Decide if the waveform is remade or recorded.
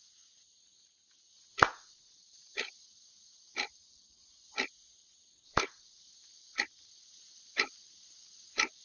recorded